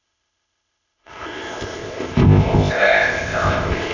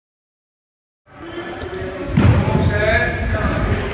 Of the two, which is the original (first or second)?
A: second